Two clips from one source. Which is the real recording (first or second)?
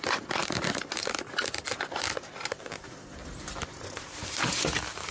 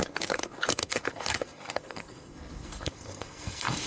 first